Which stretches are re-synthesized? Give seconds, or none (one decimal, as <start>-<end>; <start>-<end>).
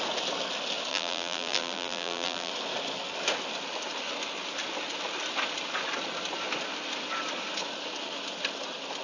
0.9-2.5